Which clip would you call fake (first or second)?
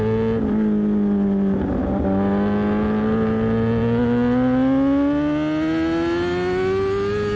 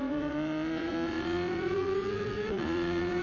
second